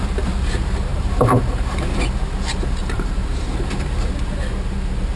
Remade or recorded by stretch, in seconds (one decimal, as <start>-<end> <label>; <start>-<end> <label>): 0.0-0.9 recorded; 0.9-2.0 remade; 2.0-2.8 recorded; 2.8-4.1 remade; 4.1-5.2 recorded